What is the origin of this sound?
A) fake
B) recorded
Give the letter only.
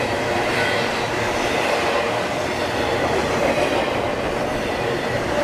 B